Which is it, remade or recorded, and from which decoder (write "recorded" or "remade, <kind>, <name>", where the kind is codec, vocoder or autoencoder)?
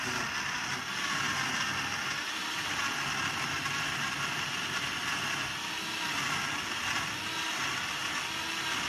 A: recorded